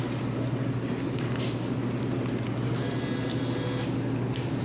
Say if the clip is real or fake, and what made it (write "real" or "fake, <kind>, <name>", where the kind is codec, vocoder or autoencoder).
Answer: real